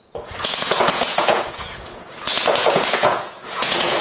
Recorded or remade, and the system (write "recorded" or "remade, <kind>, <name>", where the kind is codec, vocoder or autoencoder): remade, vocoder, Vocos